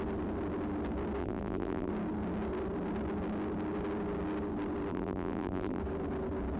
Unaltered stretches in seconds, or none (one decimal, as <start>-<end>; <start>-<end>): 0.0-1.2; 1.9-4.9; 5.8-6.6